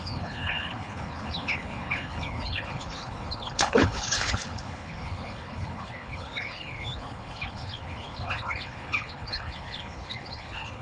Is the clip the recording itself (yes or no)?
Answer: no